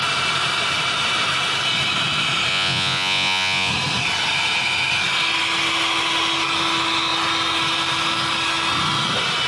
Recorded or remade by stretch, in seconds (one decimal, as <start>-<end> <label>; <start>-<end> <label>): 0.0-2.5 recorded; 2.5-3.7 remade; 3.7-9.5 recorded